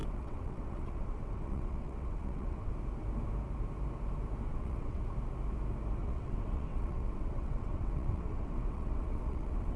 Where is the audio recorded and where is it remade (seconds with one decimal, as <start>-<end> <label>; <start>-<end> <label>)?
0.0-2.7 remade; 2.7-4.5 recorded; 4.5-5.0 remade; 5.0-6.0 recorded; 6.0-9.8 remade